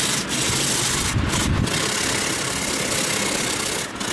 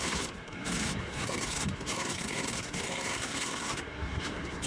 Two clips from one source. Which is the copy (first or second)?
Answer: second